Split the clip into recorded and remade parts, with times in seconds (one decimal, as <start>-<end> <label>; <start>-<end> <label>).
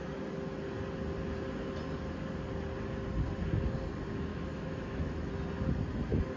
0.0-4.3 recorded; 4.3-5.3 remade; 5.3-6.4 recorded